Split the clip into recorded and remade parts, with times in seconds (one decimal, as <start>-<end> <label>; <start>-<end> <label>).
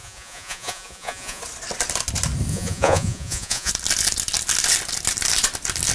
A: 0.0-1.4 remade; 1.4-2.5 recorded; 2.5-3.7 remade; 3.7-5.9 recorded